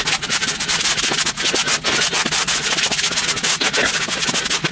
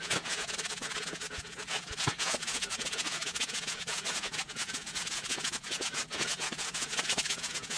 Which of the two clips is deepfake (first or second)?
second